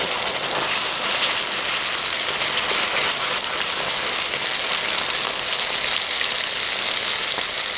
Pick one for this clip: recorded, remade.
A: recorded